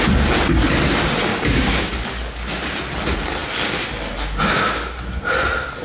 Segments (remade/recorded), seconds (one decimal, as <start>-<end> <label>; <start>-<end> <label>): 0.0-1.3 recorded; 1.3-1.9 remade; 1.9-5.8 recorded